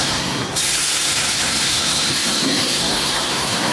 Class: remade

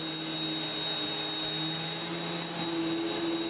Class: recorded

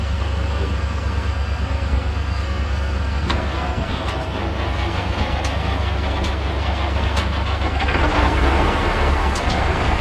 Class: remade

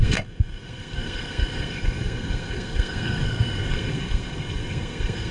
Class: remade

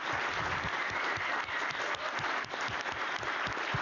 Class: recorded